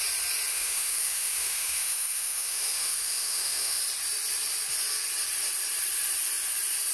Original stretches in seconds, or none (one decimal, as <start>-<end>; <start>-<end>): 0.0-0.5; 3.8-6.9